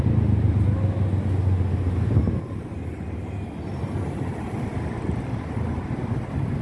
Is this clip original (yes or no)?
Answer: yes